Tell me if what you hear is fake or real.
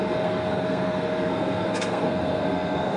fake